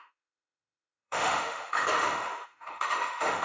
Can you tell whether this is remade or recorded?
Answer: remade